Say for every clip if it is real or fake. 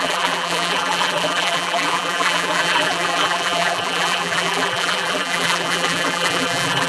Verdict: fake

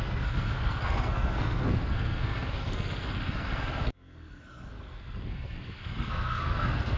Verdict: fake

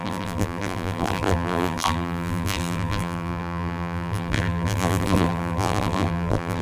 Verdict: fake